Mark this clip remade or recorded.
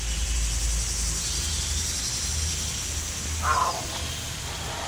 recorded